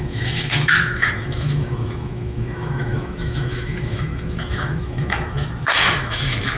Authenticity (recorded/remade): remade